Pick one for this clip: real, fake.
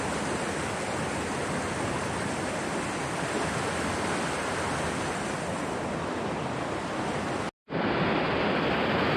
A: real